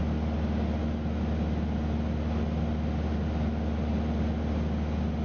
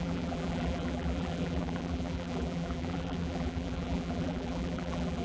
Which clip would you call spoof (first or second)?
second